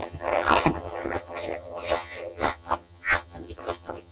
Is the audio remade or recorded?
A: remade